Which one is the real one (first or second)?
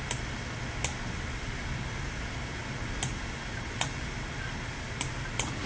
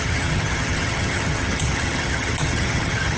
first